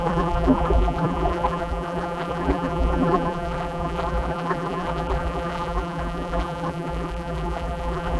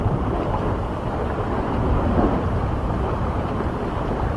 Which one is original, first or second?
second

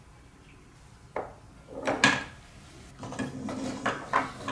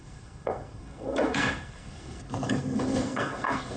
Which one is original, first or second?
first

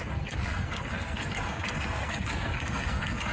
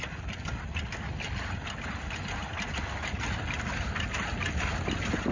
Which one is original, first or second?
second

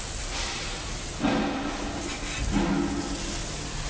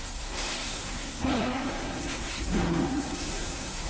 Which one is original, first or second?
first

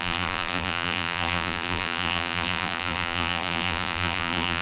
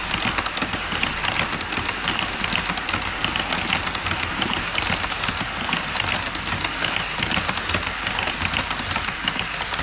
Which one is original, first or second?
second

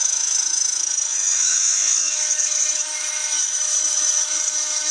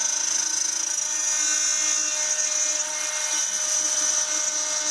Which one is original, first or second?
second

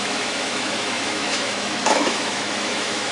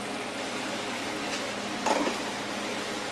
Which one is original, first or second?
second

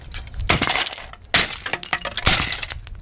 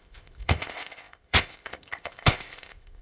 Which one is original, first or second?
first